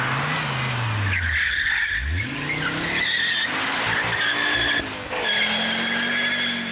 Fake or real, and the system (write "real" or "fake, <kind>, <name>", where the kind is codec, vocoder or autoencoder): real